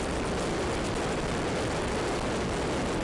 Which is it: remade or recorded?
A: recorded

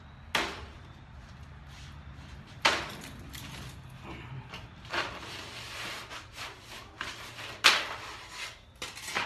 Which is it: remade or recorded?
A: recorded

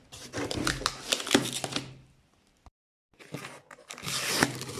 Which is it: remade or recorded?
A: remade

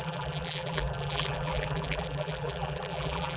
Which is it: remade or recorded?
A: remade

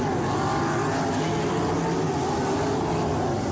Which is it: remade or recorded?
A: recorded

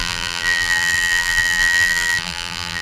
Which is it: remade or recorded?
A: remade